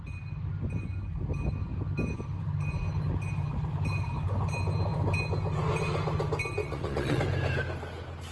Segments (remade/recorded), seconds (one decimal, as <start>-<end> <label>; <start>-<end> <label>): 0.0-6.6 recorded; 6.6-7.2 remade; 7.2-8.3 recorded